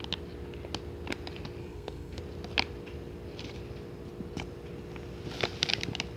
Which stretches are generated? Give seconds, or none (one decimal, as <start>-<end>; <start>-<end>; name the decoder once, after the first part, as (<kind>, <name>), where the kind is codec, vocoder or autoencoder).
1.6-2.2 (codec, SNAC)